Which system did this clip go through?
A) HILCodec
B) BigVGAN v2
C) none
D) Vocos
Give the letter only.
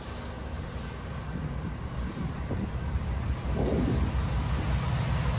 C